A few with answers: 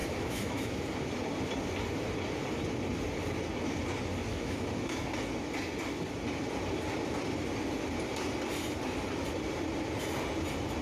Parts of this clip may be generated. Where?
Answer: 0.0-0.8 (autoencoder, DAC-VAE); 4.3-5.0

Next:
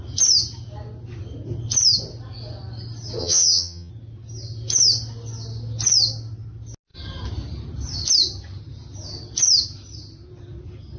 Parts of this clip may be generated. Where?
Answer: 3.2-3.9 (vocoder, HiFi-GAN)

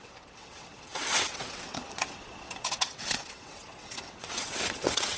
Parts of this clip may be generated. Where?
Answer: 0.0-5.2 (vocoder, WaveNeXt)

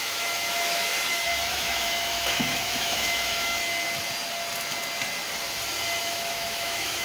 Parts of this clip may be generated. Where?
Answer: 0.0-0.9 (autoencoder, DAC-VAE); 1.5-3.6; 6.0-7.0

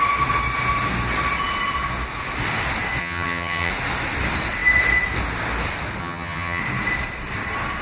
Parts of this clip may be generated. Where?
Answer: 3.0-3.7 (vocoder, HiFi-GAN); 6.0-6.6

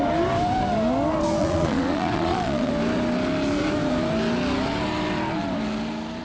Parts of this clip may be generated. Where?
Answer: 1.4-2.7 (vocoder, Vocos)

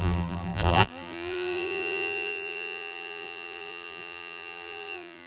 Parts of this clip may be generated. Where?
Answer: 0.0-5.3 (vocoder, BigVGAN v2)